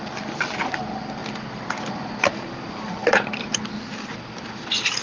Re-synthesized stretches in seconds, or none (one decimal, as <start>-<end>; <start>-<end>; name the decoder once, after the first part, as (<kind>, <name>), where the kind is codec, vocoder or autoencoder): none